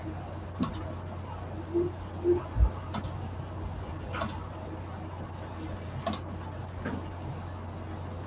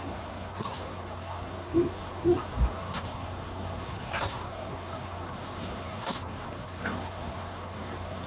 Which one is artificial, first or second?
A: second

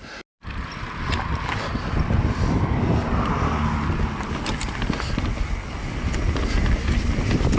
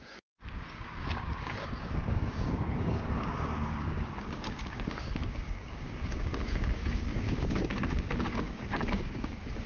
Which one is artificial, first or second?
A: second